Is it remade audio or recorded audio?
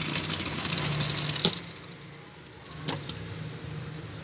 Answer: recorded